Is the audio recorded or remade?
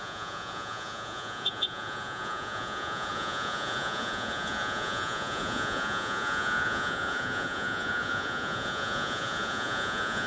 remade